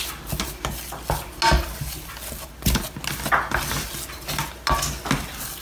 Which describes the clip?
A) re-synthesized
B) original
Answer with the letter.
B